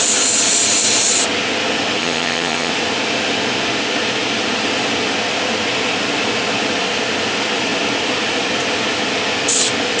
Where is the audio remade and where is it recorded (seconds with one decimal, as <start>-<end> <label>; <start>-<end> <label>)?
0.0-2.0 recorded; 2.0-2.7 remade; 2.7-10.0 recorded